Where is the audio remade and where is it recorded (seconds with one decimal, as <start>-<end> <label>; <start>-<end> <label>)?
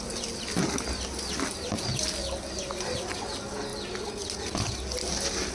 0.0-5.5 recorded